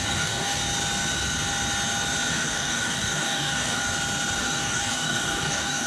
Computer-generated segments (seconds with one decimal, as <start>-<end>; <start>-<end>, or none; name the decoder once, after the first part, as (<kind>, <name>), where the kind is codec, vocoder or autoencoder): 0.0-0.6 (codec, DAC); 2.3-3.8; 4.4-5.9